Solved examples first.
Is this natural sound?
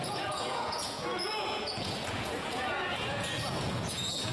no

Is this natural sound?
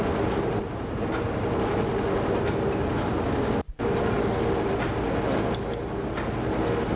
yes